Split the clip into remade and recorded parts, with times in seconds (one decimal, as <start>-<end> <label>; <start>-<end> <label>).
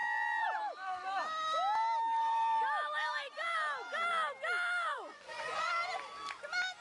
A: 0.0-4.9 recorded; 4.9-5.7 remade; 5.7-6.8 recorded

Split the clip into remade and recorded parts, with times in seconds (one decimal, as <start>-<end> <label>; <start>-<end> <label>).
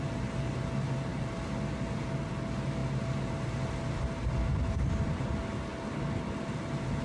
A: 0.0-7.0 recorded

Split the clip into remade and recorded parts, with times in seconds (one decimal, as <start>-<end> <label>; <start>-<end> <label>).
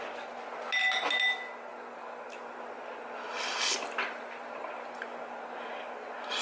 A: 0.0-6.4 recorded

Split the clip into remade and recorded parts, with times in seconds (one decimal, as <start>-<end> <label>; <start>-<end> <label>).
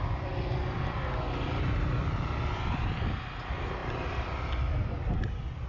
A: 0.0-5.7 recorded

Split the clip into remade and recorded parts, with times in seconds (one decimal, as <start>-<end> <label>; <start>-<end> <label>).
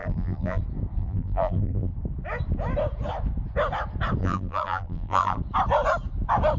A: 0.0-0.6 remade; 0.6-1.0 recorded; 1.0-1.9 remade; 1.9-4.2 recorded; 4.2-5.4 remade; 5.4-6.6 recorded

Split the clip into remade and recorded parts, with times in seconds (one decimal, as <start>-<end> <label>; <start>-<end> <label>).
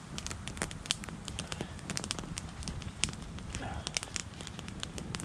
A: 0.0-1.0 recorded; 1.0-3.8 remade; 3.8-4.2 recorded; 4.2-5.2 remade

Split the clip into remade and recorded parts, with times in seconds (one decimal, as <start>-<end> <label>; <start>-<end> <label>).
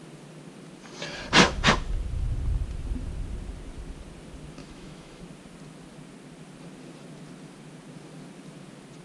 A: 0.0-4.6 recorded; 4.6-5.2 remade; 5.2-9.0 recorded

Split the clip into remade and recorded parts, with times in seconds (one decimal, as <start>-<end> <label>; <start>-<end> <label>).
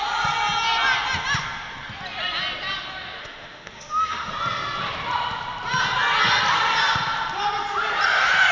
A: 0.0-3.2 recorded; 3.2-4.3 remade; 4.3-8.5 recorded